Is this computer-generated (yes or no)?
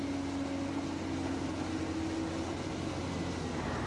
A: no